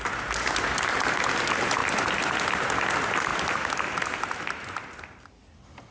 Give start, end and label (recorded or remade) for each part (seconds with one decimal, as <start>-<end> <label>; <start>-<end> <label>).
0.0-5.9 recorded